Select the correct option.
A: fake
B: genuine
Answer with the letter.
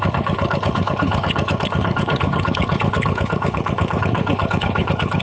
A